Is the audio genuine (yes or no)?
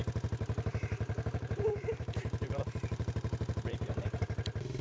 no